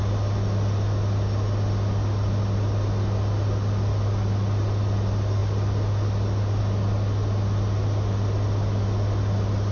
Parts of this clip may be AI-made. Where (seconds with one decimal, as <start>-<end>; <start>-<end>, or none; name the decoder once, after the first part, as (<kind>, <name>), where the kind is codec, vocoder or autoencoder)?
none

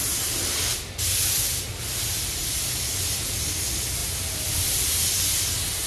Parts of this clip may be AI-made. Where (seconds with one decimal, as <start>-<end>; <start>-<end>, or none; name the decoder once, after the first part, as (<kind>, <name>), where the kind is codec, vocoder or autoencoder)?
2.4-3.2 (vocoder, BigVGAN v2); 4.0-5.4

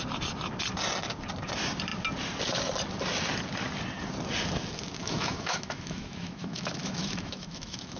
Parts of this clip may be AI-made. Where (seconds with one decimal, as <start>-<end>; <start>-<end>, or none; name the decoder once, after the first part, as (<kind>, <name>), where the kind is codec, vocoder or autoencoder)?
5.0-8.0 (autoencoder, DAC-VAE)

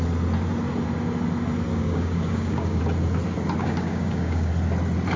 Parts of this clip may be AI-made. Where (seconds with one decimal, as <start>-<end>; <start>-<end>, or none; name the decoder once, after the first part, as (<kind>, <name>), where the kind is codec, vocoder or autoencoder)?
1.7-2.8 (codec, DAC); 3.6-4.5